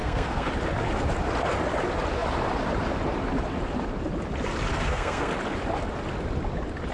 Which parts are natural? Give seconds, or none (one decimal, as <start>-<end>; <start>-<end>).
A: 0.5-4.7; 5.3-6.9